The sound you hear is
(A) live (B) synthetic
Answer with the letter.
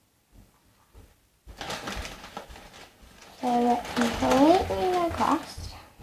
A